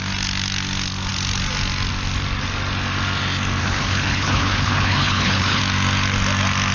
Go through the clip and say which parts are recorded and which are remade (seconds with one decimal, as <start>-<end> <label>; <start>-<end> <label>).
0.0-3.6 recorded; 3.6-5.6 remade; 5.6-6.7 recorded